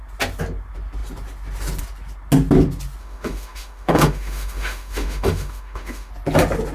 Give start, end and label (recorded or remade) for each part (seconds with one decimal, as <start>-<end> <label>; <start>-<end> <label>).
0.0-3.0 recorded; 3.0-6.1 remade; 6.1-6.7 recorded